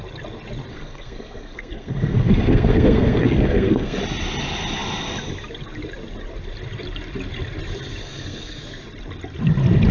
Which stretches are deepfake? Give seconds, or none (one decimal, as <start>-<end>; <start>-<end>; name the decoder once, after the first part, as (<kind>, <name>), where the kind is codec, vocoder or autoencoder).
0.7-4.0 (codec, SNAC); 8.0-8.6